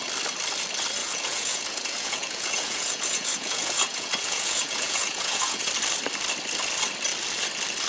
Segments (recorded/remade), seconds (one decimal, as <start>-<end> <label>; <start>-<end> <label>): 0.0-1.0 recorded; 1.0-5.7 remade; 5.7-7.9 recorded